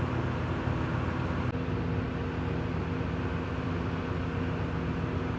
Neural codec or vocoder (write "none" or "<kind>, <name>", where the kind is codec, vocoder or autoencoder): none